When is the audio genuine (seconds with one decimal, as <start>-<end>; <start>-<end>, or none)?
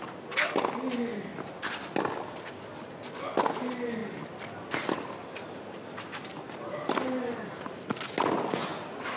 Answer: 0.0-9.2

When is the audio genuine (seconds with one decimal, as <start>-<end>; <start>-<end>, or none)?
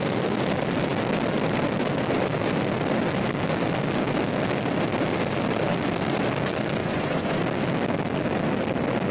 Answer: 0.0-6.8; 7.4-9.1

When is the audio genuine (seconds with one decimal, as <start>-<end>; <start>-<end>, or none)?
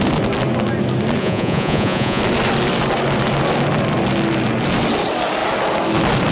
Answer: 0.0-1.2; 2.2-6.3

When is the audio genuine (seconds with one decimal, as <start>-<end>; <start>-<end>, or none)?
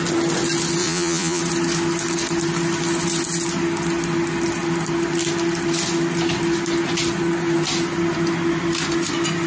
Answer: 0.0-0.8; 1.4-9.5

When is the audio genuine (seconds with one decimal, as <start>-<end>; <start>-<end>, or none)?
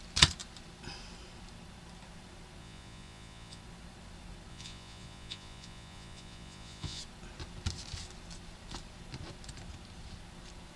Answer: 0.0-2.6; 3.6-4.5; 7.0-10.8